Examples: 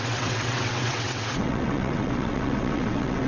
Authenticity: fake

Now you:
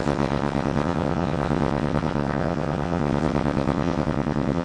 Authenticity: fake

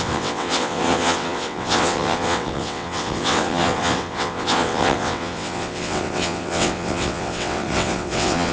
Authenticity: fake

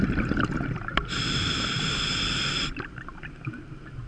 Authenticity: real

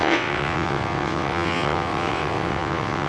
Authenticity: fake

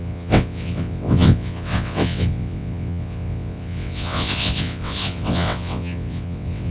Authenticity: fake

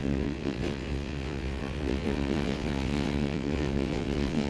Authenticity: fake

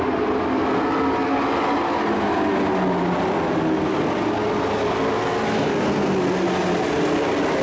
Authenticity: real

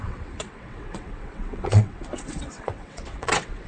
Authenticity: fake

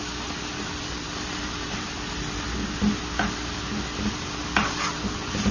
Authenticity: real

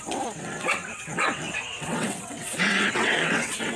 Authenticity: fake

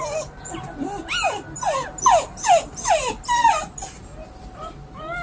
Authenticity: real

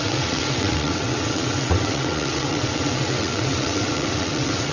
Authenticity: fake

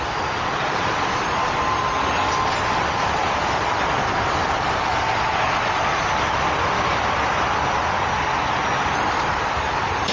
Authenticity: real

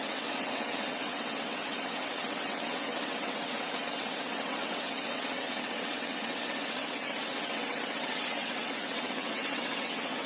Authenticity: fake